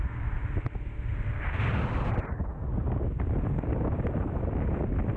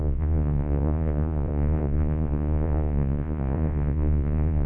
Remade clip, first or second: second